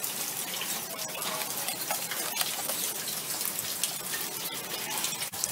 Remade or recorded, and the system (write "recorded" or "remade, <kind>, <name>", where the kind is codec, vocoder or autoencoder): recorded